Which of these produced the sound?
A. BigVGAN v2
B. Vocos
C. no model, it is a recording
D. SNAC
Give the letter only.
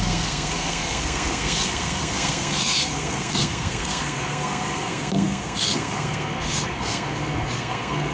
D